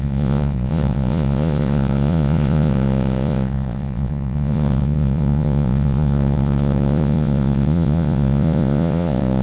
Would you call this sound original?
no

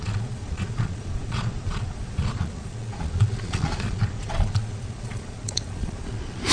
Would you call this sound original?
no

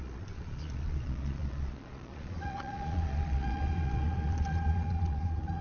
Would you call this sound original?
no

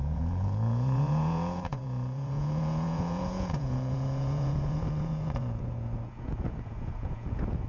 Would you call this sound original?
no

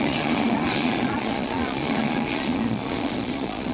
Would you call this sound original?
no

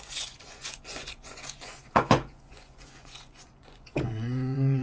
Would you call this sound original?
no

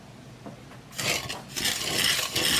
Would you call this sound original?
yes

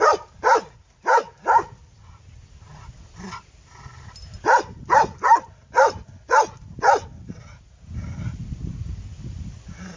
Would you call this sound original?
yes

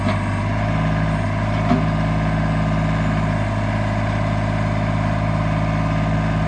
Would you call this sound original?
yes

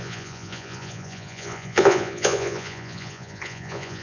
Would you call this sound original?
no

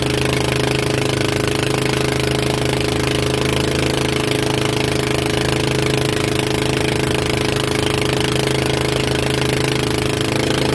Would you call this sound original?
yes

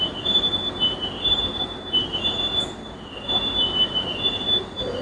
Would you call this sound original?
yes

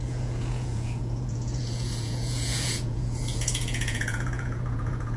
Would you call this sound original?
no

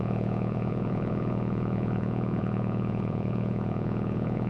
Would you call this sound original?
no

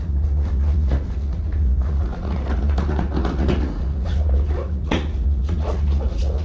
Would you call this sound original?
no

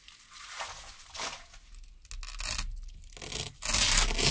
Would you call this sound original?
yes